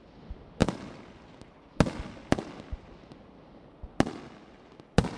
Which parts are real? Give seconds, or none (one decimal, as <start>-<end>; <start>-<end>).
0.0-5.2